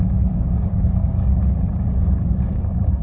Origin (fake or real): fake